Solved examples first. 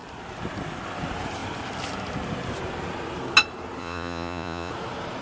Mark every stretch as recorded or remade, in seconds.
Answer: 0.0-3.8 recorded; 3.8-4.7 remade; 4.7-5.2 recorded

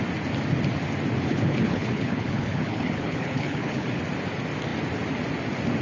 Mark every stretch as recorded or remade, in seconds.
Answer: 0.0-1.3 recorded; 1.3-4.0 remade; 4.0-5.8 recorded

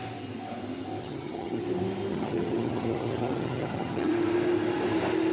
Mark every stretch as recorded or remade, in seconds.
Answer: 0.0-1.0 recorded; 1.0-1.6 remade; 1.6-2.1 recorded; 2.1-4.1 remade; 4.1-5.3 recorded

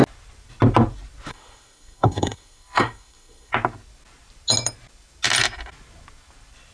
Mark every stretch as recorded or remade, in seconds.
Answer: 0.0-1.3 recorded; 1.3-3.5 remade; 3.5-6.7 recorded

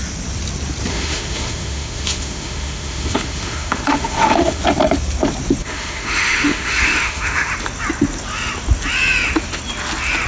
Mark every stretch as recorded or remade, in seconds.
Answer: 0.0-0.9 recorded; 0.9-4.6 remade; 4.6-5.6 recorded; 5.6-7.5 remade; 7.5-10.3 recorded

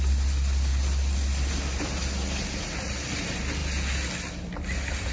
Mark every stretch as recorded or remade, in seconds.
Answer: 0.0-5.1 recorded

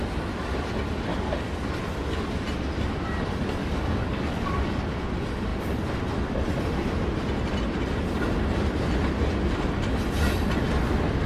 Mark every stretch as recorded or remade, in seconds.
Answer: 0.0-1.1 recorded; 1.1-1.7 remade; 1.7-3.6 recorded; 3.6-4.8 remade; 4.8-11.3 recorded

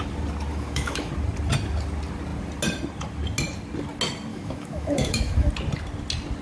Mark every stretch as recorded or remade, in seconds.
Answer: 0.0-0.5 recorded; 0.5-1.1 remade; 1.1-4.3 recorded; 4.3-5.5 remade; 5.5-6.4 recorded